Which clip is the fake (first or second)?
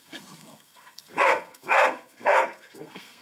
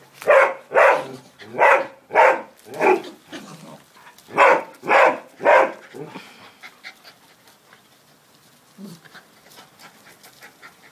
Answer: first